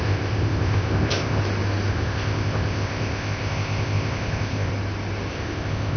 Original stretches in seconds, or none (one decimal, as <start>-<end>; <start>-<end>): 1.4-1.9; 4.7-5.3